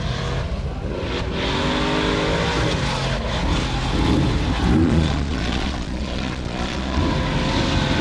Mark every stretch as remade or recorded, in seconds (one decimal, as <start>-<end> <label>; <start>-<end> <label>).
0.0-4.8 recorded; 4.8-7.0 remade; 7.0-8.0 recorded